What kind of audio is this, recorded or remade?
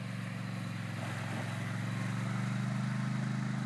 recorded